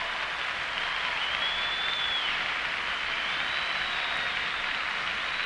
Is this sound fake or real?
real